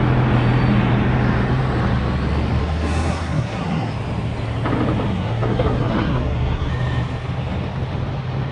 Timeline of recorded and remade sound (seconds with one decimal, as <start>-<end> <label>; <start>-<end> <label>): 0.0-2.6 recorded; 2.6-3.9 remade; 3.9-5.1 recorded; 5.1-6.7 remade; 6.7-8.5 recorded